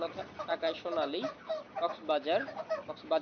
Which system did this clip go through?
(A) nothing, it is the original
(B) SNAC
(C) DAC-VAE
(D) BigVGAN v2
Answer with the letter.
A